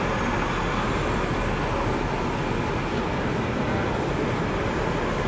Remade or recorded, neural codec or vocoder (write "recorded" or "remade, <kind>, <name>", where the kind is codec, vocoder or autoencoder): recorded